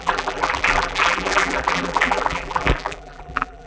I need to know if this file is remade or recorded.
remade